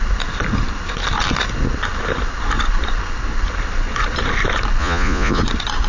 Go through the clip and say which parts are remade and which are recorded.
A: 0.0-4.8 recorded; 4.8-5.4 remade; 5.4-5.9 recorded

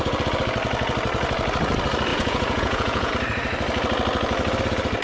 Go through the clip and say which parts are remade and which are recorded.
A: 0.0-2.1 recorded; 2.1-3.1 remade; 3.1-5.0 recorded

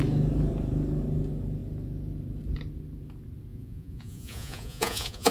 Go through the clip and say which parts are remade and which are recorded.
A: 0.0-3.5 recorded; 3.5-5.3 remade

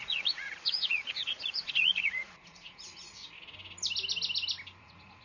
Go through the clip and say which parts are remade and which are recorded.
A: 0.0-3.1 remade; 3.1-4.8 recorded; 4.8-5.2 remade

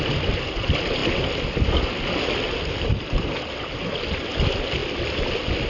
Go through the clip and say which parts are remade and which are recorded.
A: 0.0-5.7 recorded